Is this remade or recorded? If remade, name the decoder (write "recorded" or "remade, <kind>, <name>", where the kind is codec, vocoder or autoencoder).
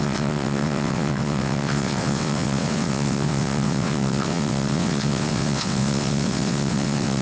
remade, vocoder, WaveNeXt